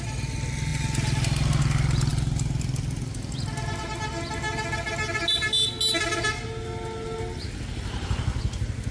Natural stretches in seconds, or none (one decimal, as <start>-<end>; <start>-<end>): 0.0-2.1; 3.2-8.9